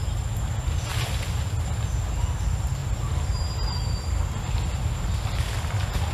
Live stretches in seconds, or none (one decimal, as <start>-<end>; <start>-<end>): 0.0-6.1